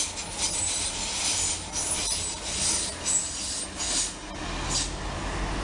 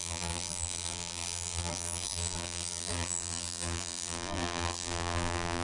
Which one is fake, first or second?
second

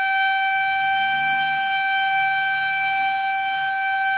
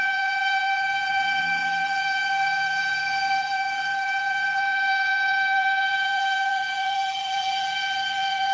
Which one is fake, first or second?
second